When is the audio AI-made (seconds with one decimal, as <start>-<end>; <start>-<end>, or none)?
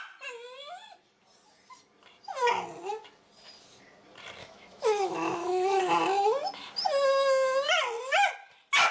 4.4-5.8